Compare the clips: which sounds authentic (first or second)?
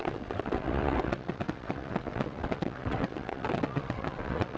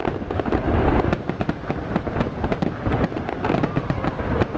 second